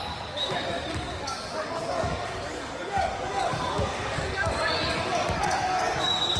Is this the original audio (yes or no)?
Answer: no